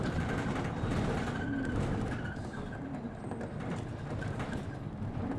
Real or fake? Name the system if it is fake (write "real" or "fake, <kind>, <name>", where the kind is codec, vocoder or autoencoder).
fake, vocoder, BigVGAN v2